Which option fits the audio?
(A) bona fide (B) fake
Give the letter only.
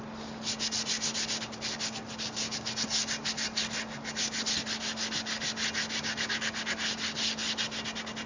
A